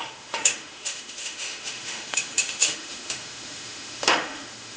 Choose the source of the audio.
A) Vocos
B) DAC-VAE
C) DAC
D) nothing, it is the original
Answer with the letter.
B